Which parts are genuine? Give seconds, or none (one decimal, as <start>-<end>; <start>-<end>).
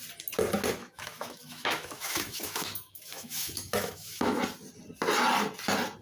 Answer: 0.0-0.8; 4.4-6.0